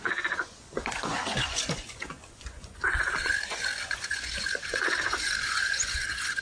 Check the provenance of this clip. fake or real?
fake